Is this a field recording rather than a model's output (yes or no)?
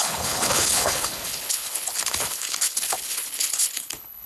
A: no